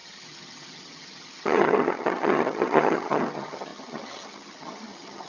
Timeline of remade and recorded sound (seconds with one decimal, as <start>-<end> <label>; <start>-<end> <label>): 0.0-5.3 remade